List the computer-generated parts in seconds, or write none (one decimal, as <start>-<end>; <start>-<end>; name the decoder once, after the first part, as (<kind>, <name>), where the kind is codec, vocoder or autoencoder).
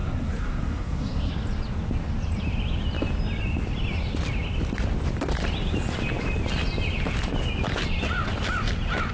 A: 0.0-1.3 (codec, SNAC)